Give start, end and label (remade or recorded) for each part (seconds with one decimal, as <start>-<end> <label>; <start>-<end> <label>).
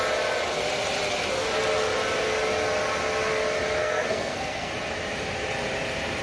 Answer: 0.0-3.8 recorded; 3.8-4.7 remade; 4.7-6.2 recorded